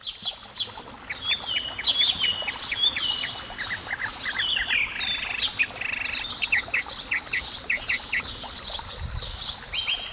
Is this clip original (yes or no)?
yes